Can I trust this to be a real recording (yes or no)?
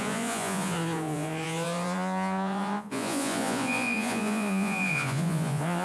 no